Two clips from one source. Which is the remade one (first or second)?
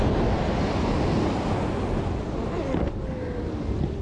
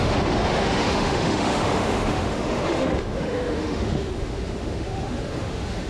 second